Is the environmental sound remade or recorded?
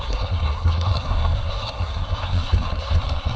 remade